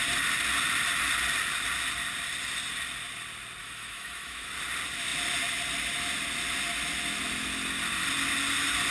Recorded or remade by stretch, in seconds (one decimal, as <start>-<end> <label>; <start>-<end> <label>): 0.0-3.6 recorded; 3.6-4.5 remade; 4.5-8.9 recorded